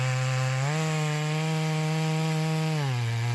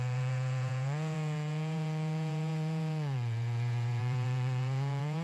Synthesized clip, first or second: second